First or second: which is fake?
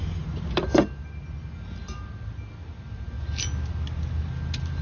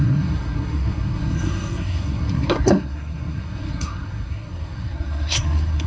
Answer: second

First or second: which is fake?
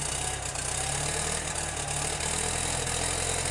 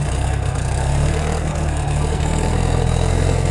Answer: second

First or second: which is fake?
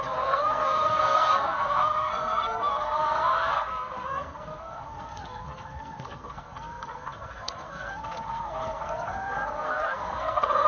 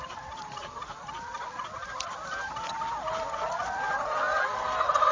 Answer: first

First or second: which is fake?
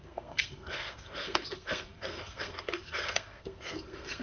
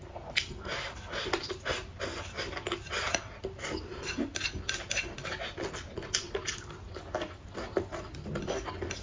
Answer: first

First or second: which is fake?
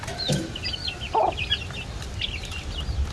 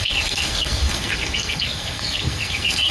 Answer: second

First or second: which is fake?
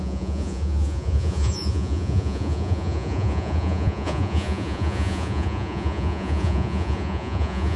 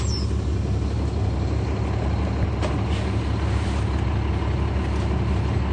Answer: first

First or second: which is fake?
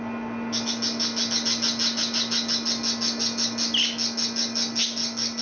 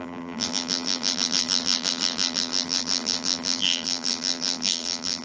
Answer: second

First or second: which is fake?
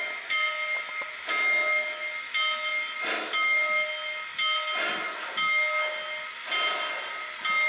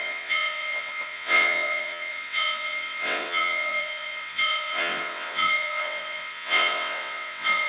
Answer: second